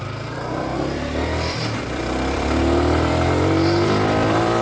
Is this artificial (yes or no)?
yes